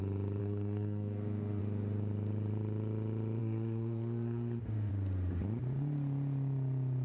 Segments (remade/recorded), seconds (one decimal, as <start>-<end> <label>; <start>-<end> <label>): 0.0-0.4 recorded; 0.4-1.6 remade; 1.6-3.4 recorded; 3.4-4.9 remade; 4.9-7.0 recorded